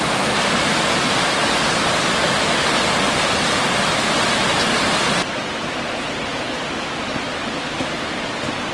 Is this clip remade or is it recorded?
recorded